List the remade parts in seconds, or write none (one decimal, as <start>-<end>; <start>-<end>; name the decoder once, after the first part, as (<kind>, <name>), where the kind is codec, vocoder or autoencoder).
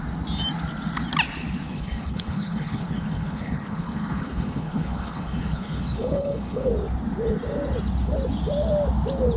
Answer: 1.7-6.7 (codec, HILCodec)